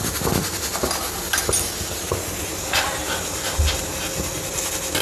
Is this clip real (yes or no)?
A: yes